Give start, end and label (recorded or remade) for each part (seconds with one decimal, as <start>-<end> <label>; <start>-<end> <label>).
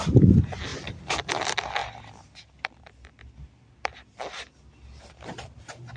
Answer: 0.0-1.8 recorded; 1.8-5.1 remade; 5.1-6.0 recorded